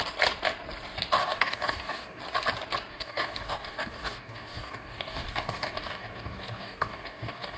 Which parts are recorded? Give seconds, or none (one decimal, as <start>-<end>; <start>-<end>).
0.0-1.2; 2.2-2.9